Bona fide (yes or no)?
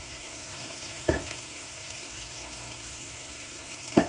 no